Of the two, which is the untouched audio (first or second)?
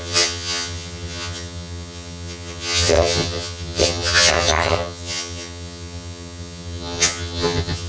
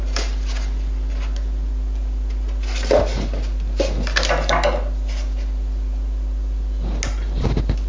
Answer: second